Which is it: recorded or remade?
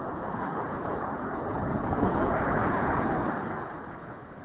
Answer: remade